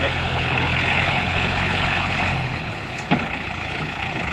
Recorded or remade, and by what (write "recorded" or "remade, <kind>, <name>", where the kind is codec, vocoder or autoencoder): remade, codec, HILCodec